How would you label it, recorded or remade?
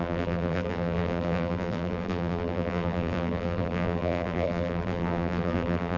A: remade